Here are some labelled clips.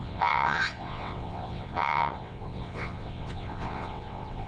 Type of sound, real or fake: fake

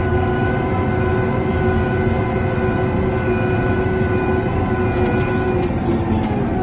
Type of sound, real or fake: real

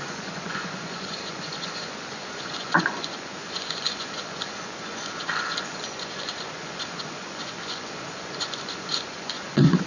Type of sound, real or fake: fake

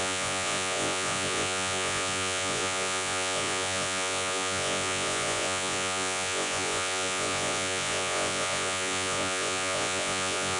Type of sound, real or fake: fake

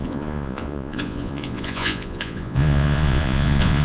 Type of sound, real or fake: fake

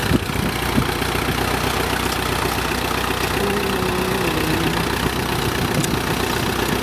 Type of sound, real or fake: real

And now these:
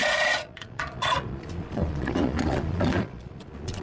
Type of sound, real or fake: fake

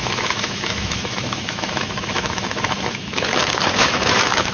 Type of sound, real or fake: fake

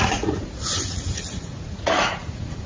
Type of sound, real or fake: fake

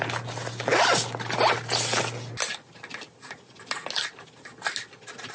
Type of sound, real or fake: real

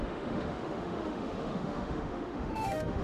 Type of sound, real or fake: fake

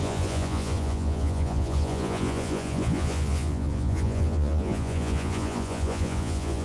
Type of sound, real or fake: fake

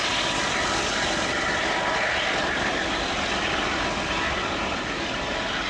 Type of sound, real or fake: real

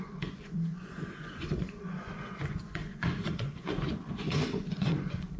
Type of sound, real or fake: fake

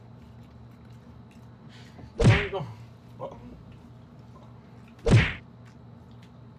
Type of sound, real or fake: real